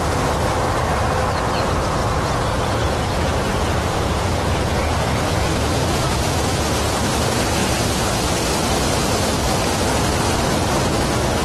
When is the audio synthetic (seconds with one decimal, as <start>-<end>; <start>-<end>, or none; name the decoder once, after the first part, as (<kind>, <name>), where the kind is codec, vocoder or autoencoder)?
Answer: 2.0-6.7 (vocoder, Vocos)

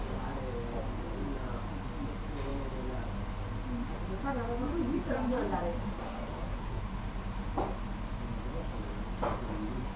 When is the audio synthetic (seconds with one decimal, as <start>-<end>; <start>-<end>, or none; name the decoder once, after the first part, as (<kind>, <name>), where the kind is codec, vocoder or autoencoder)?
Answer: 5.8-6.8 (codec, SNAC)

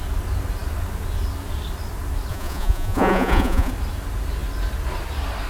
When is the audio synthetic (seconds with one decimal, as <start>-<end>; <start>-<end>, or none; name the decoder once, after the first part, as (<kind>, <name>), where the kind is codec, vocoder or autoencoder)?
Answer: 2.3-3.7 (vocoder, Vocos)